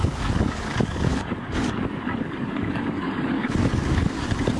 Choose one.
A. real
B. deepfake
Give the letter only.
B